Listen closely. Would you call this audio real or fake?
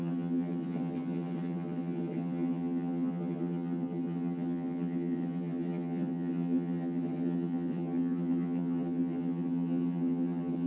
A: fake